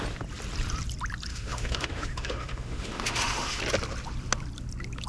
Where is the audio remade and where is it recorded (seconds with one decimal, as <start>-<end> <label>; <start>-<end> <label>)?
0.0-1.3 recorded; 1.3-3.6 remade; 3.6-5.1 recorded